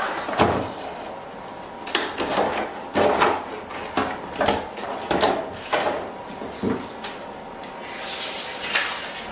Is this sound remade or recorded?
recorded